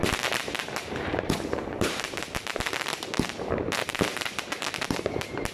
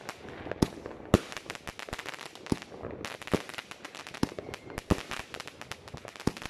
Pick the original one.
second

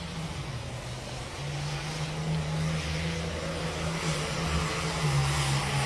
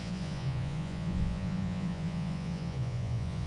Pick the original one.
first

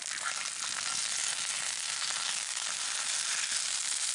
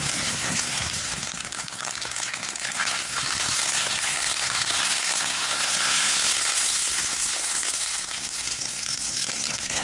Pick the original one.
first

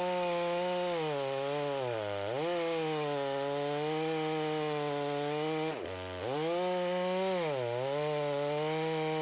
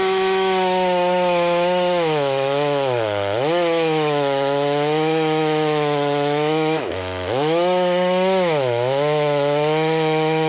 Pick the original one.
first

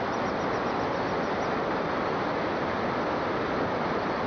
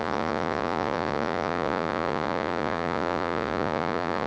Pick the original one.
first